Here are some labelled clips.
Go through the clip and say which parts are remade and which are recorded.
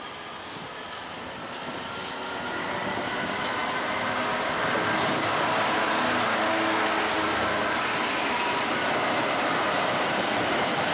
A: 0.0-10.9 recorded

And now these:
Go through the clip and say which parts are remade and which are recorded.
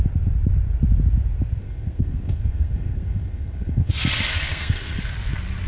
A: 0.0-1.6 recorded; 1.6-3.9 remade; 3.9-4.5 recorded; 4.5-5.0 remade; 5.0-5.7 recorded